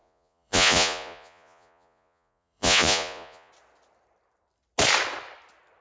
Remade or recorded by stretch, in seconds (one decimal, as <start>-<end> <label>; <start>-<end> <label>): 0.0-3.5 remade; 3.5-5.8 recorded

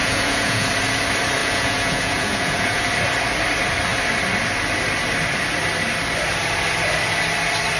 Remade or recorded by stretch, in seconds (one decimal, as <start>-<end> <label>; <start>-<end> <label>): 0.0-0.7 remade; 0.7-1.4 recorded; 1.4-2.8 remade; 2.8-7.8 recorded

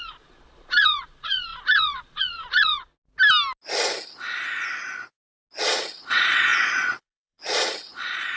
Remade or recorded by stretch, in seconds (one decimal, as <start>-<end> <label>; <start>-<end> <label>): 0.0-2.9 remade; 2.9-5.6 recorded; 5.6-8.4 remade

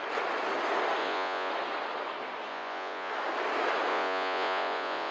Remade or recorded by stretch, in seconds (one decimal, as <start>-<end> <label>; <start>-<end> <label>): 0.0-1.0 recorded; 1.0-1.5 remade; 1.5-2.5 recorded; 2.5-3.1 remade; 3.1-3.9 recorded; 3.9-5.1 remade

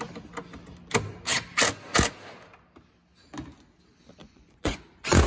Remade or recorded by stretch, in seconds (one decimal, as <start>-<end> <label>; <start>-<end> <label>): 0.0-4.2 recorded; 4.2-5.3 remade

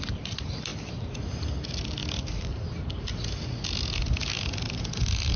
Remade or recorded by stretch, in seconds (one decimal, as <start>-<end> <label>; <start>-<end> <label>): 0.0-5.4 recorded

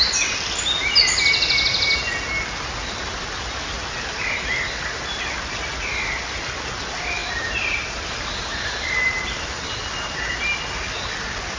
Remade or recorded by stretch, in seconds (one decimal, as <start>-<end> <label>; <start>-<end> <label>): 0.0-11.6 recorded

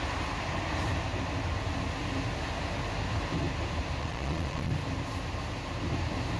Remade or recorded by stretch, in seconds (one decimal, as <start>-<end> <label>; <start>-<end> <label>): 0.0-4.0 recorded; 4.0-4.7 remade; 4.7-6.4 recorded